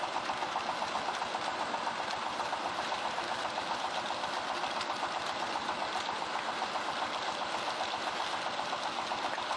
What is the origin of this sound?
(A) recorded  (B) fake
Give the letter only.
A